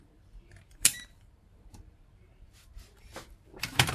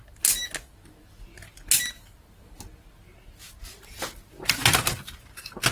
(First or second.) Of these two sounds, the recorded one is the second